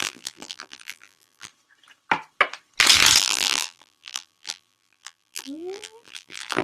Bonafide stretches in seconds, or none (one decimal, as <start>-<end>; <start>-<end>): 1.5-3.2